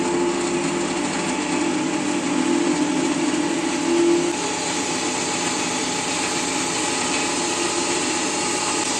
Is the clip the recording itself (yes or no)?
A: yes